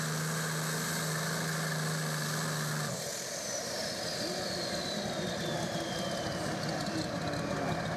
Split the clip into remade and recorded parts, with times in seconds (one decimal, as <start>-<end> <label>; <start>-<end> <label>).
0.0-3.1 recorded; 3.1-3.8 remade; 3.8-8.0 recorded